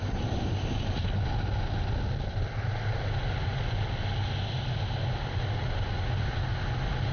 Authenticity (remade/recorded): recorded